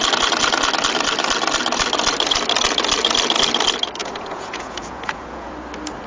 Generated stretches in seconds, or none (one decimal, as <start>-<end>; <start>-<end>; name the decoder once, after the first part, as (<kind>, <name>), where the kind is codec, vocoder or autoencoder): 4.0-5.5 (vocoder, Vocos)